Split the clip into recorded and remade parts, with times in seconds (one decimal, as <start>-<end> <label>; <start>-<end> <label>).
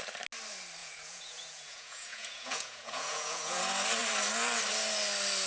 0.0-0.8 recorded; 0.8-3.6 remade; 3.6-5.5 recorded